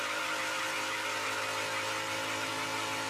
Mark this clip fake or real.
real